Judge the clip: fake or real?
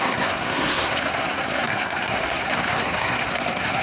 fake